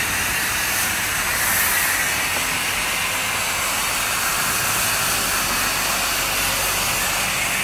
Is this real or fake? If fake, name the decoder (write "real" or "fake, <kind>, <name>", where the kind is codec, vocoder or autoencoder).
real